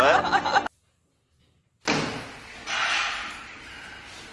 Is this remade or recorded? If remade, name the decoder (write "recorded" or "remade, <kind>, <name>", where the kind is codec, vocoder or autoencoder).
recorded